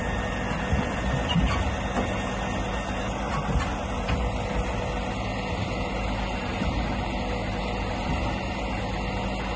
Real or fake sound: real